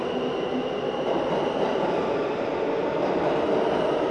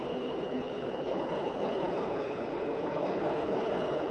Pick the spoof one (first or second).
second